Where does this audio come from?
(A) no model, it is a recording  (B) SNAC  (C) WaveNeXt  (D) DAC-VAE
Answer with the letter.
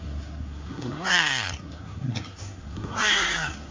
B